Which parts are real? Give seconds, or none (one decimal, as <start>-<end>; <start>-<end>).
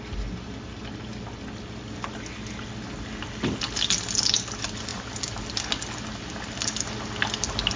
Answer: 0.0-7.8